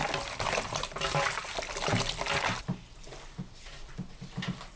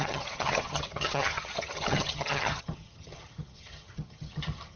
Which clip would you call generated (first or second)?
second